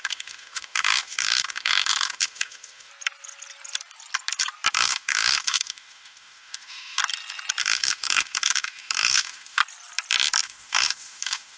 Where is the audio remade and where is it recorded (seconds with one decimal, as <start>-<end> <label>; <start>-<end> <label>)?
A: 0.0-2.9 remade; 2.9-4.7 recorded; 4.7-7.0 remade; 7.0-7.6 recorded; 7.6-9.6 remade; 9.6-10.4 recorded; 10.4-11.6 remade